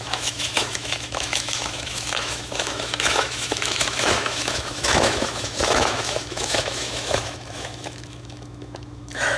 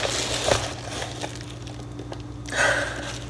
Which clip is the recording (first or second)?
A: second